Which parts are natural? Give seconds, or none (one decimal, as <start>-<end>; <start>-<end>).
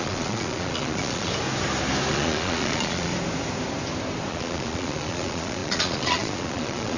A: 1.3-2.1; 3.1-4.3